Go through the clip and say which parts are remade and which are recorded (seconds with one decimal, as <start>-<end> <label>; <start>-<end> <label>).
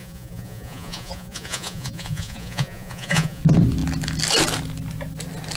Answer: 0.0-3.4 remade; 3.4-5.6 recorded